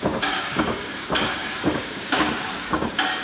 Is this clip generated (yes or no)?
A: yes